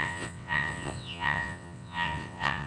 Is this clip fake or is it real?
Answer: fake